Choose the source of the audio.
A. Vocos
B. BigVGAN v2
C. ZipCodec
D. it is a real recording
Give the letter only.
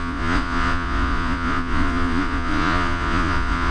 A